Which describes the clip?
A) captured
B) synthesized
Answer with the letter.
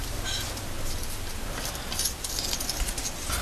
A